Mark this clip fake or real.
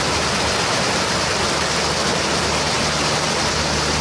real